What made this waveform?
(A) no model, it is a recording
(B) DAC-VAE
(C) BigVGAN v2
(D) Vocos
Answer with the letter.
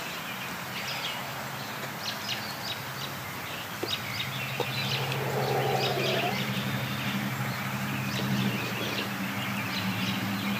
A